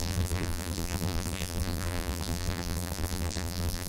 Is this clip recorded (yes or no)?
no